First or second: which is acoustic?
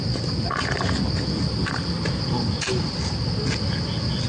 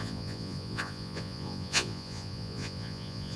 first